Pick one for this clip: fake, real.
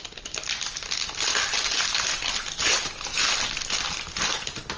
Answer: real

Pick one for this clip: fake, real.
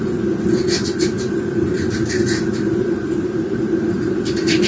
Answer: fake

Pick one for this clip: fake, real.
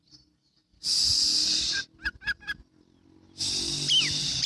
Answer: real